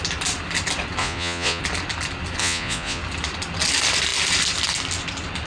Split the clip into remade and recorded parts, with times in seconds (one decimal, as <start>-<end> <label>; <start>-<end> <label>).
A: 0.0-1.0 recorded; 1.0-1.6 remade; 1.6-2.4 recorded; 2.4-3.0 remade; 3.0-5.5 recorded